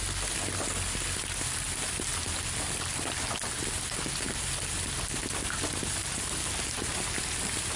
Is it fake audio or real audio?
real